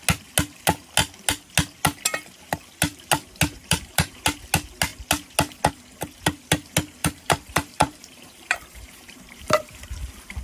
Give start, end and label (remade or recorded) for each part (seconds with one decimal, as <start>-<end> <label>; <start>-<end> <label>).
0.0-3.6 recorded; 3.6-4.2 remade; 4.2-7.0 recorded; 7.0-10.4 remade